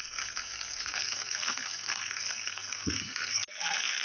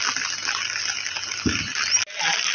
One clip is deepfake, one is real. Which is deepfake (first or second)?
first